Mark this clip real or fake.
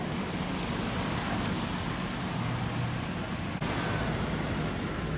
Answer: real